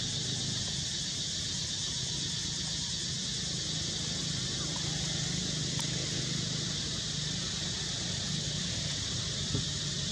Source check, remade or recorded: recorded